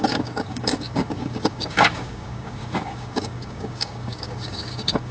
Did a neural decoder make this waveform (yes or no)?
yes